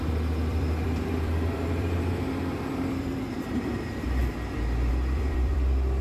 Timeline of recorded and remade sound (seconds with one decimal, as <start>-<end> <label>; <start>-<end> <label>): 0.0-4.2 remade; 4.2-4.9 recorded; 4.9-6.0 remade